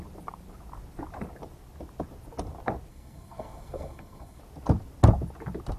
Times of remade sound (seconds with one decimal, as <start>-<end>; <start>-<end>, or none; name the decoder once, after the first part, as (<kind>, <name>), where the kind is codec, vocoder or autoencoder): 2.9-4.4 (codec, SNAC)